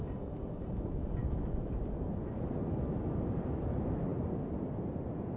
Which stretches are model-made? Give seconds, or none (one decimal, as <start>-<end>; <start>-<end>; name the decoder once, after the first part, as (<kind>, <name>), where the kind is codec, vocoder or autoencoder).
1.2-1.8 (autoencoder, DAC-VAE)